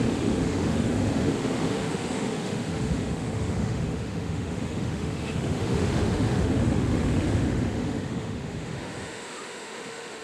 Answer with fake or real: fake